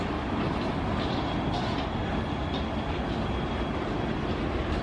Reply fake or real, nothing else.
real